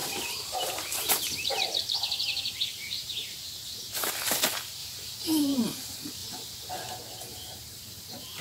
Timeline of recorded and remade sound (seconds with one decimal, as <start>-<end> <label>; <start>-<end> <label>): 0.0-4.0 remade; 4.0-4.8 recorded; 4.8-5.6 remade; 5.6-7.3 recorded; 7.3-8.4 remade